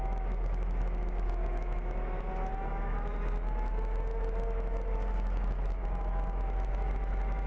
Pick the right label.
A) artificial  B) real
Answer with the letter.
A